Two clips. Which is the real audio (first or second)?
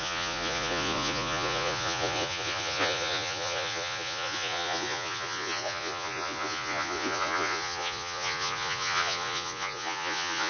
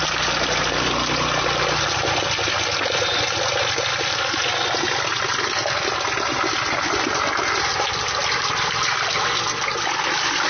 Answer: second